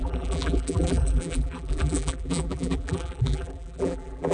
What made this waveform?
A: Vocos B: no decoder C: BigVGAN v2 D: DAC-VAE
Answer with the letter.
C